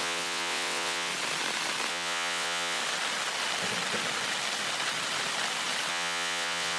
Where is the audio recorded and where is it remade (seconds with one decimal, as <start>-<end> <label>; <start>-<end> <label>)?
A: 0.0-1.1 remade; 1.1-1.9 recorded; 1.9-2.8 remade; 2.8-5.9 recorded; 5.9-6.8 remade